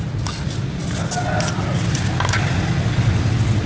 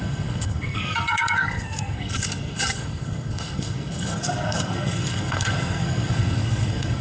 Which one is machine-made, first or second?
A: second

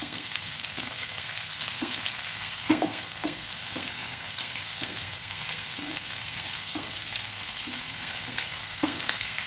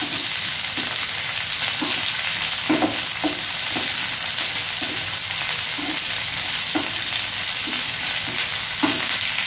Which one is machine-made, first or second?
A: first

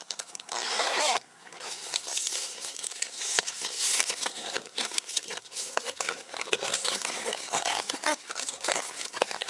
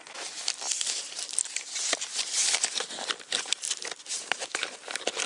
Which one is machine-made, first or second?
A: first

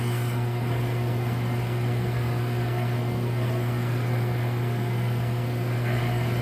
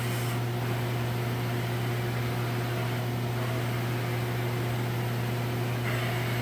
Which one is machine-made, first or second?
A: first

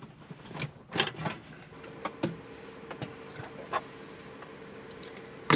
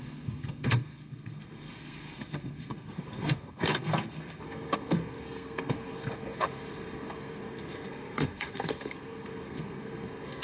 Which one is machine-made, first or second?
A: second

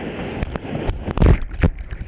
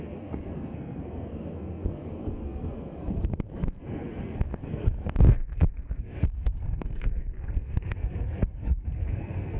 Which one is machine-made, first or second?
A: second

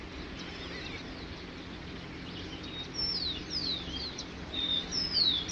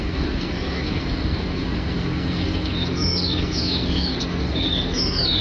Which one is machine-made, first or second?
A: second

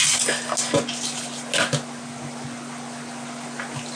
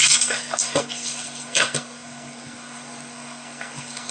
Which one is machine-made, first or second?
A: second